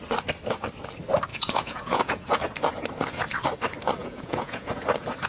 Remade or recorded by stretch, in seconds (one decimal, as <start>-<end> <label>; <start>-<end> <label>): 0.0-1.3 recorded; 1.3-2.4 remade; 2.4-4.0 recorded; 4.0-4.7 remade; 4.7-5.3 recorded